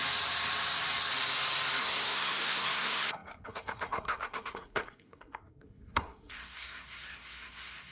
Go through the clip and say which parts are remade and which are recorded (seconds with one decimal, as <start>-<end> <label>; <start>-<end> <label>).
0.0-1.8 recorded; 1.8-7.9 remade